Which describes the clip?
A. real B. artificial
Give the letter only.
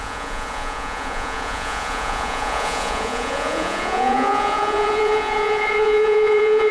B